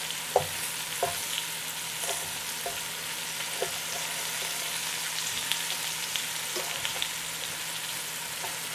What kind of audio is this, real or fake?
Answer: real